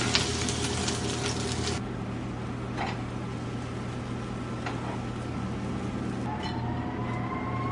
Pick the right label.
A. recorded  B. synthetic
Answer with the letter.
A